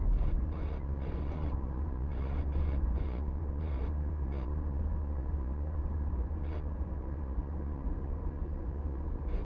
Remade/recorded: remade